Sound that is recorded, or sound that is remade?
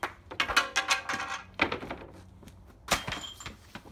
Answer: recorded